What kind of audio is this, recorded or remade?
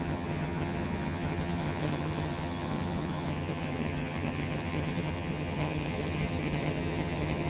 remade